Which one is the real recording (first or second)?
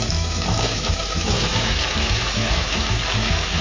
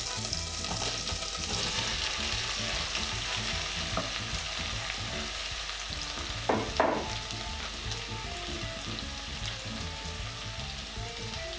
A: second